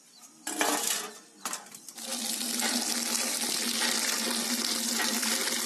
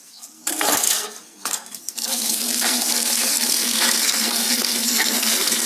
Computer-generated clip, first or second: second